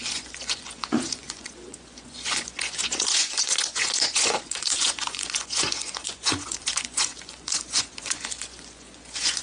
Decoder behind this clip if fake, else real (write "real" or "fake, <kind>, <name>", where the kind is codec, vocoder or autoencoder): fake, vocoder, Vocos